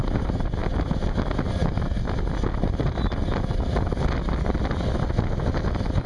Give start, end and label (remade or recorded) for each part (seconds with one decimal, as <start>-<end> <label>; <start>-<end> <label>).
0.0-6.1 recorded